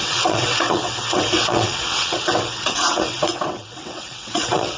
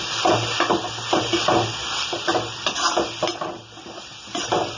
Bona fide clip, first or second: second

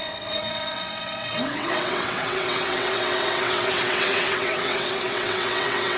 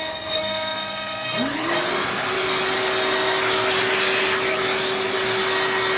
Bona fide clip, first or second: second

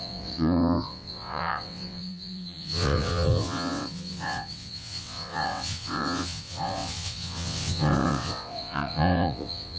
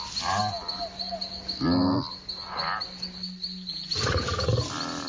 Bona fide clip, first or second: second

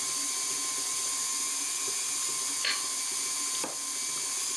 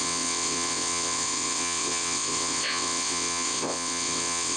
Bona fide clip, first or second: first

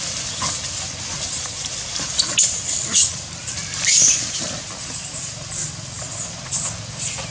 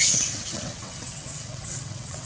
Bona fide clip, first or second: first